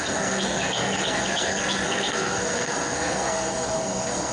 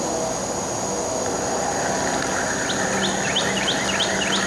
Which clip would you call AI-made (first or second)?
first